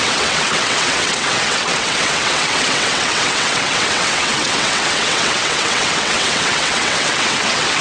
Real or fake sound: fake